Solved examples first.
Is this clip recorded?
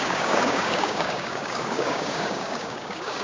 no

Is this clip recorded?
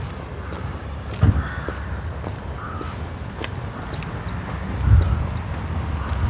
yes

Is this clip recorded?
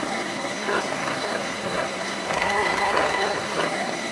no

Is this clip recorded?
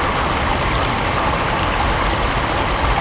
no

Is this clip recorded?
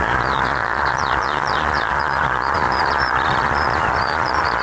no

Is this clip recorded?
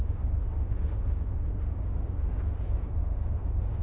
no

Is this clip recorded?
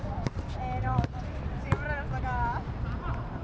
yes